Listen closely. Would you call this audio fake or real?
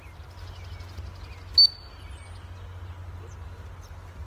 real